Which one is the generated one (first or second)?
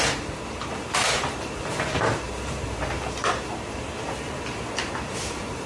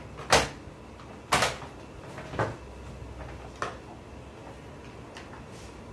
first